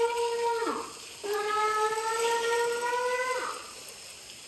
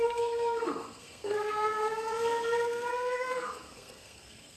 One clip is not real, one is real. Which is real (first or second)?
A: first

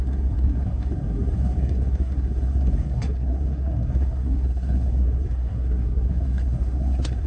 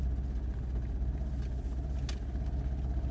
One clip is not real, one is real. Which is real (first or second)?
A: second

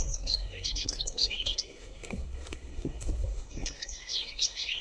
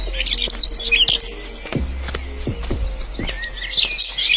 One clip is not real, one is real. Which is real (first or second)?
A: second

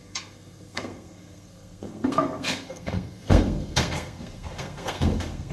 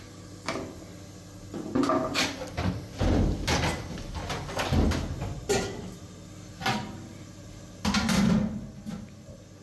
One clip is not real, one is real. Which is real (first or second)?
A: second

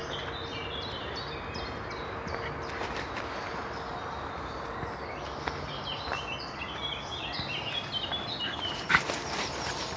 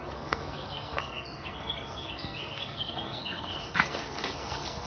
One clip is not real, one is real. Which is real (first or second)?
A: first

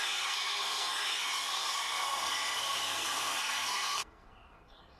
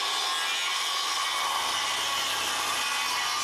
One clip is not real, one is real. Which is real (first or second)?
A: second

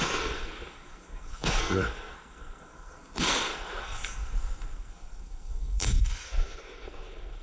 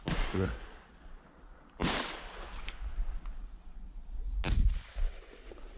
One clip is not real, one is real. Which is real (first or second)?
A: second